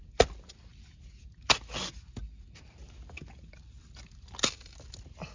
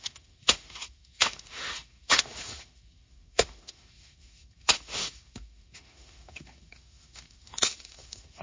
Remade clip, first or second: second